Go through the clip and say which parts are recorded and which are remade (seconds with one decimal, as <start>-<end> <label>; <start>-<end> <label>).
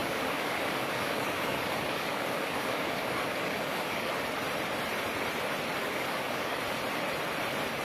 0.0-4.1 remade; 4.1-5.8 recorded; 5.8-6.6 remade; 6.6-7.8 recorded